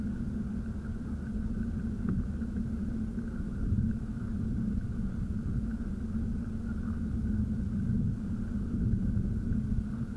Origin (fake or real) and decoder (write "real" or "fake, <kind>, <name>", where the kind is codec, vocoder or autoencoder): real